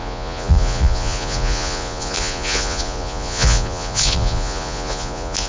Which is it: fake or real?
fake